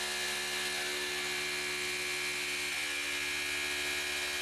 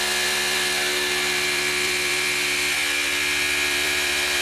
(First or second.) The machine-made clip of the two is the second